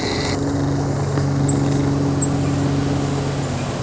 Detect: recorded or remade recorded